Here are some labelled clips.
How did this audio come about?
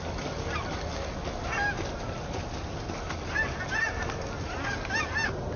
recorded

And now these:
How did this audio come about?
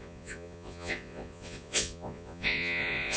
remade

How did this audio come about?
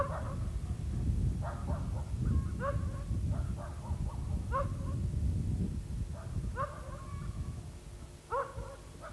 recorded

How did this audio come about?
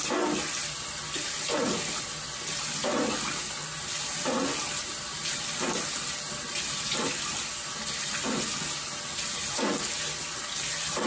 recorded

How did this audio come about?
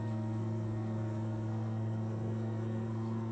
remade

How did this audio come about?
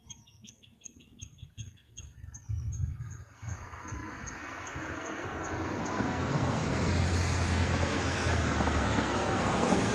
remade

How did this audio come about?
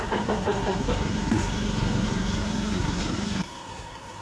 remade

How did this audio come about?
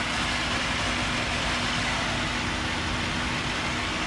recorded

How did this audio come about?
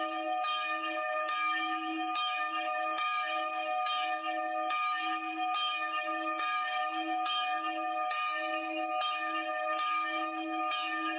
remade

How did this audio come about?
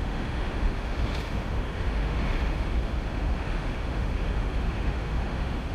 remade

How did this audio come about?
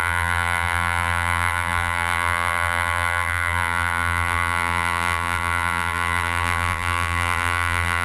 remade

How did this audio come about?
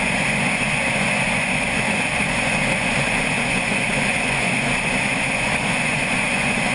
remade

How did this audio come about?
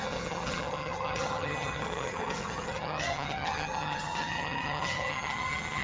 remade